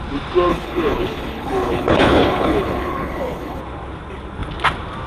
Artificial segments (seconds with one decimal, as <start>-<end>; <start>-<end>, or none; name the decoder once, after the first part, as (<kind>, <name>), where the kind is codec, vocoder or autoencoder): 0.5-3.6 (codec, HILCodec)